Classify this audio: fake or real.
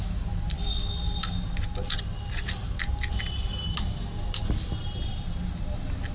real